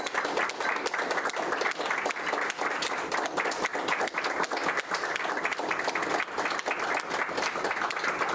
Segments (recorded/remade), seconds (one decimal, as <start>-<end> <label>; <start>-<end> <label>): 0.0-8.3 recorded